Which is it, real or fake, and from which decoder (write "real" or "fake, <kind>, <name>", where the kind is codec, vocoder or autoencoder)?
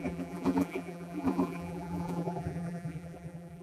fake, vocoder, BigVGAN v2